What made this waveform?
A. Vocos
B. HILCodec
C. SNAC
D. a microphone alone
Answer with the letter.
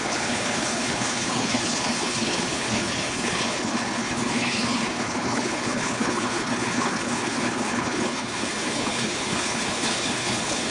B